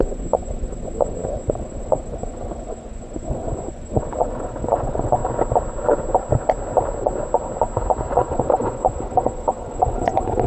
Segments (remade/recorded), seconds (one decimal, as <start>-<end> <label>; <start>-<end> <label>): 0.0-5.2 remade; 5.2-8.1 recorded; 8.1-10.5 remade